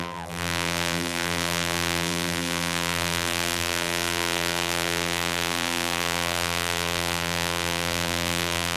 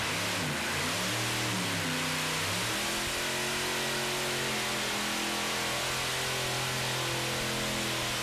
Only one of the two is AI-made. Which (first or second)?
first